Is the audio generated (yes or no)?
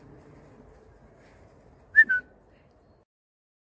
no